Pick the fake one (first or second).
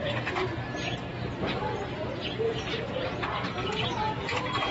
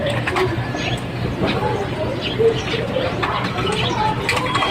second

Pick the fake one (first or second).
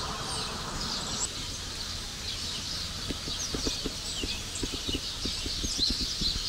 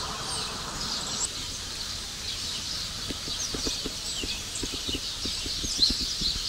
second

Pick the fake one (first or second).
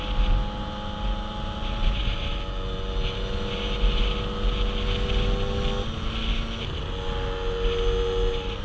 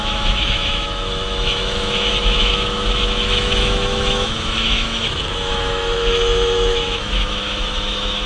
second